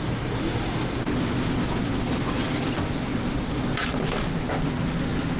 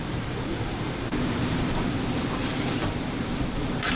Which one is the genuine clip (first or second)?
first